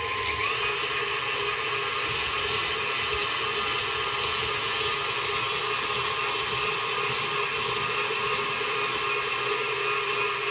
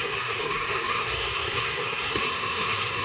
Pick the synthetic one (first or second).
second